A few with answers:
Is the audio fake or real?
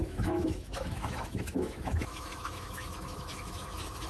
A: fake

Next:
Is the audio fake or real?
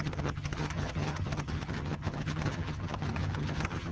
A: fake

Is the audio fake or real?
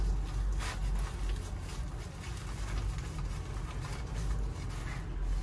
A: real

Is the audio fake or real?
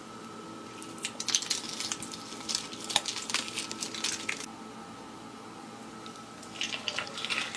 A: real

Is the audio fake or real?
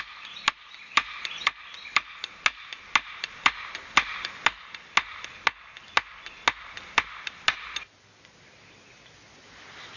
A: real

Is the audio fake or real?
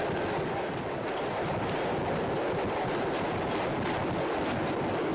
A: real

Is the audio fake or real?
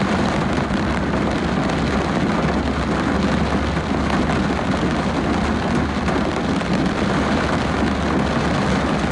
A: real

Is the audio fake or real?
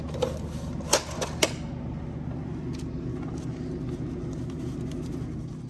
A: real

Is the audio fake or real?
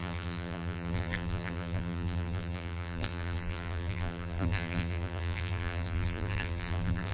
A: fake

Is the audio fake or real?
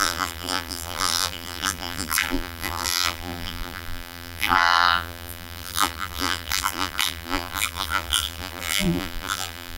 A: fake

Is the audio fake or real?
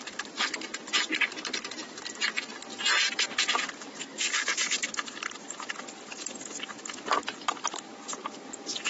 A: real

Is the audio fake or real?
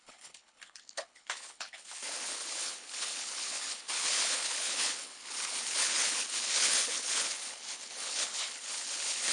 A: fake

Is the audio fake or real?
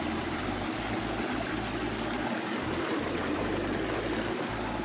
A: real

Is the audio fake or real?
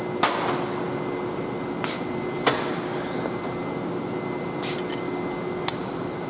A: real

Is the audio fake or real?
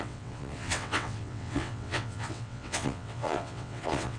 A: fake